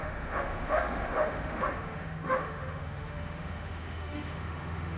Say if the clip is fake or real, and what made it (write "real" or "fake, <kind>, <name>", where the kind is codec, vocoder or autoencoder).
fake, autoencoder, DAC-VAE